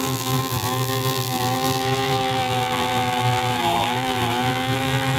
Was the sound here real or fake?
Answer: fake